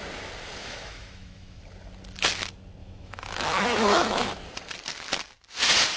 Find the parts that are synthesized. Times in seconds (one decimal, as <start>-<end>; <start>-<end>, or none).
0.6-1.6; 2.8-4.4